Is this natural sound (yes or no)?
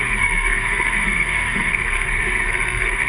no